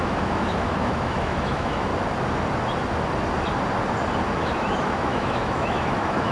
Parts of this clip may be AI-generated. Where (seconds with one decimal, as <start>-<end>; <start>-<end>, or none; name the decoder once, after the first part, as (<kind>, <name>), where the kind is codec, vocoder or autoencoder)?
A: 0.0-1.9 (autoencoder, DAC-VAE); 4.3-6.3